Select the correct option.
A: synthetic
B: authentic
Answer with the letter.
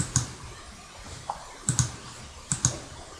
B